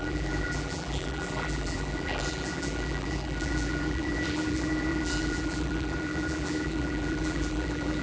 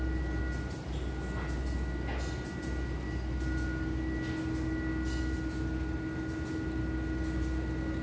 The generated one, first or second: first